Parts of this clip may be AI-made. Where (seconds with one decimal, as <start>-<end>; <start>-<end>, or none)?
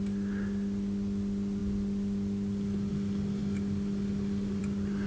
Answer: none